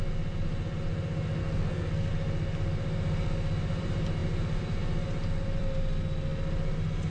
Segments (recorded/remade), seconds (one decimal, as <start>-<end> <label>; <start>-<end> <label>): 0.0-1.4 recorded; 1.4-2.1 remade; 2.1-7.1 recorded

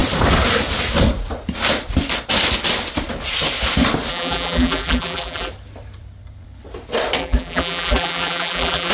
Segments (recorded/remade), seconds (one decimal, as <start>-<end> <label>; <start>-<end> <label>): 0.0-4.1 recorded; 4.1-5.5 remade; 5.5-7.2 recorded; 7.2-8.9 remade

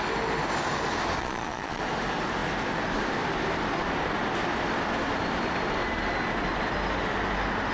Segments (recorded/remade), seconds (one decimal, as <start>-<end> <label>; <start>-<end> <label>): 0.0-1.2 recorded; 1.2-1.8 remade; 1.8-7.7 recorded

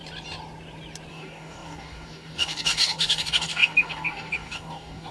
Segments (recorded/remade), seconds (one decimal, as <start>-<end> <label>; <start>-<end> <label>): 0.0-1.1 recorded; 1.1-5.1 remade

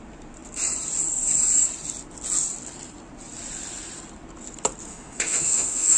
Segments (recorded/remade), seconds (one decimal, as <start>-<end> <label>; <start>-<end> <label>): 0.0-4.9 recorded; 4.9-6.0 remade

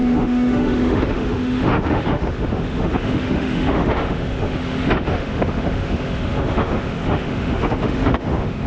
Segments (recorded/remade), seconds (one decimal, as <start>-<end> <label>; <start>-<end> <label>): 0.0-8.7 remade

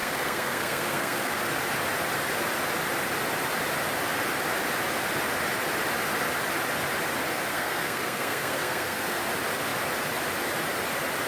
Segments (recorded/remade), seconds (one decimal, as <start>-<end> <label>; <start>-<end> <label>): 0.0-1.4 remade; 1.4-7.5 recorded; 7.5-9.2 remade; 9.2-11.3 recorded

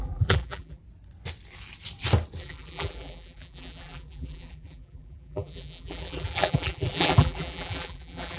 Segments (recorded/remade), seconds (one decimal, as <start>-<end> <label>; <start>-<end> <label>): 0.0-0.8 remade; 0.8-2.4 recorded; 2.4-8.4 remade